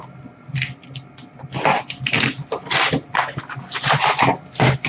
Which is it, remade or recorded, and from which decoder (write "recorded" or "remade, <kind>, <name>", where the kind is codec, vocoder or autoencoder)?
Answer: recorded